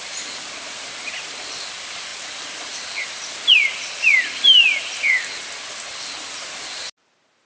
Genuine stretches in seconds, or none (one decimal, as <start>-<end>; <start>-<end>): 0.0-7.5